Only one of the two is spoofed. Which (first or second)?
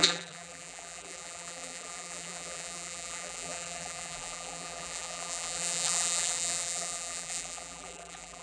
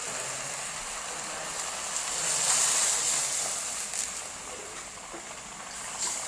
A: first